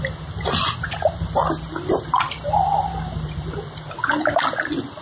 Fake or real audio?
real